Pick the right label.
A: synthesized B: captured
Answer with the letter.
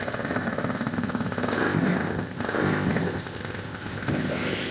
A